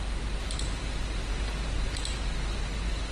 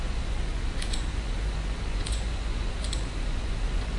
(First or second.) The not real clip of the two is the second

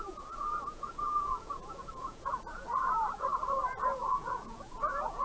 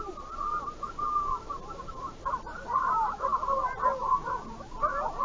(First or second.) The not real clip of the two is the first